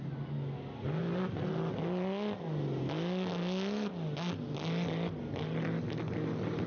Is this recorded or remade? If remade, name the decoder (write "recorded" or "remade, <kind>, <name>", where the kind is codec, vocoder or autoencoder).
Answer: recorded